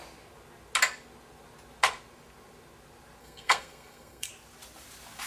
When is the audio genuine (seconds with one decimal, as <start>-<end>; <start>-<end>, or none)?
0.0-3.2; 4.3-5.3